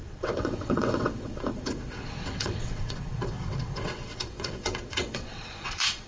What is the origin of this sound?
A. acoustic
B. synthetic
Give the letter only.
B